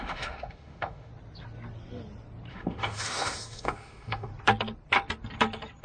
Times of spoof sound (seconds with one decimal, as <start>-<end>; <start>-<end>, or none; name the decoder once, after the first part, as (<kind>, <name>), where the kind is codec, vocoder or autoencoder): 0.0-1.1 (autoencoder, DAC-VAE); 2.5-4.3